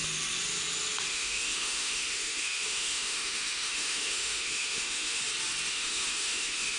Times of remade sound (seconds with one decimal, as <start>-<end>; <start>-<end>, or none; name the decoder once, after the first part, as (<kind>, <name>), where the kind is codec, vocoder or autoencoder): 1.1-5.2 (autoencoder, DAC-VAE); 5.7-6.8